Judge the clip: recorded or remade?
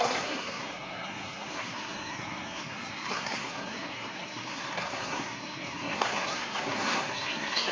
remade